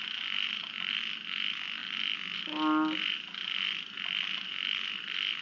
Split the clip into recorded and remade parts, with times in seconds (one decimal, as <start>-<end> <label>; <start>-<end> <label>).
0.0-5.4 recorded